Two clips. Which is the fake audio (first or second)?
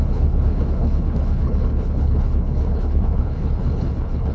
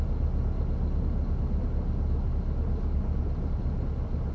first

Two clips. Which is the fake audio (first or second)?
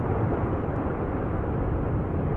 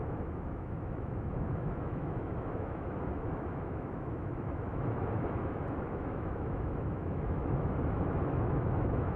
second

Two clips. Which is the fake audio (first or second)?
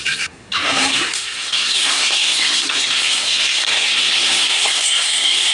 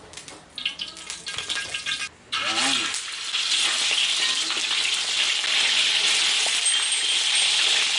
first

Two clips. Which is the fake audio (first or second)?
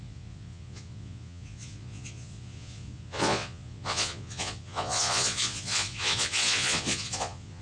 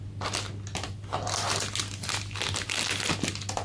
first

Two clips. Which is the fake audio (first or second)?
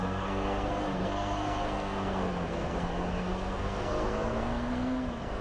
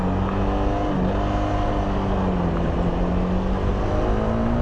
first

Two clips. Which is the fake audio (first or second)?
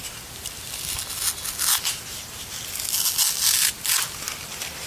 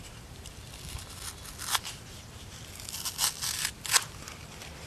second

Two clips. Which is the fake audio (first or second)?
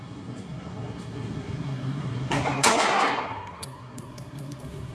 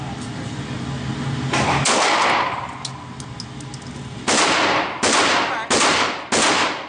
first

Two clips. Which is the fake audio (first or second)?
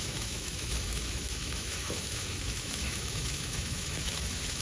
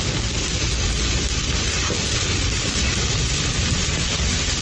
first